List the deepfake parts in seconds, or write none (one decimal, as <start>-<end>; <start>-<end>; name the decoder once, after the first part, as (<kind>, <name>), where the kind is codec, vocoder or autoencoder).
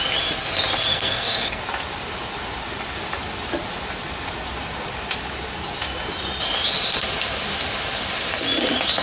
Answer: 0.9-1.6 (codec, SNAC)